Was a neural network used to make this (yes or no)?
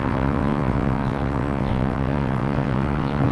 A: yes